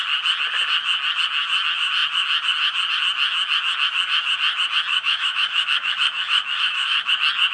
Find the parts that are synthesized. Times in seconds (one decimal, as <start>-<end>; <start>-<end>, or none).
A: 4.9-7.1